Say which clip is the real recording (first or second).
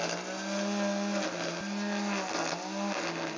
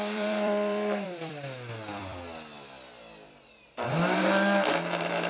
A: first